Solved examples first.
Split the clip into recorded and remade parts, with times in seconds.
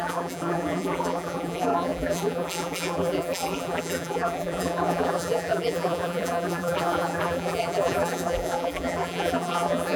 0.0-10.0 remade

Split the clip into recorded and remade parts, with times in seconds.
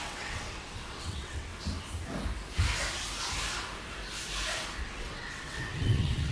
0.0-1.5 remade; 1.5-4.8 recorded; 4.8-6.3 remade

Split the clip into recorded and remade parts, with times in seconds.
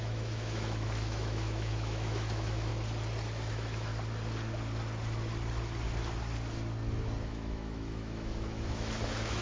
0.0-2.7 remade; 2.7-3.5 recorded; 3.5-3.9 remade; 3.9-7.2 recorded; 7.2-9.4 remade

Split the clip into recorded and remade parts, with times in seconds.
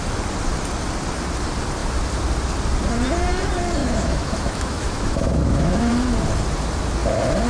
0.0-3.8 recorded; 3.8-5.9 remade; 5.9-7.5 recorded